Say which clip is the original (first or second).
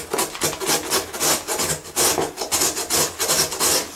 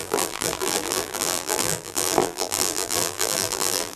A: first